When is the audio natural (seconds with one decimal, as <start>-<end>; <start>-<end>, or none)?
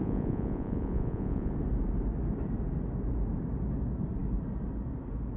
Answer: 1.5-5.4